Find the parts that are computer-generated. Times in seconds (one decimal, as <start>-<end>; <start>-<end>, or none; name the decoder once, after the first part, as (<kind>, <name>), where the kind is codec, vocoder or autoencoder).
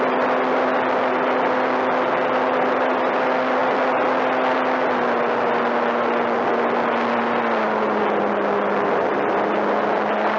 none